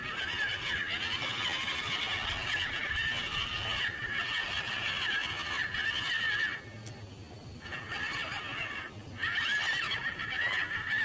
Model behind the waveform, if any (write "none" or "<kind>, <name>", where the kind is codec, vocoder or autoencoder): none